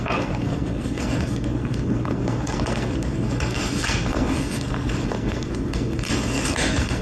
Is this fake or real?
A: fake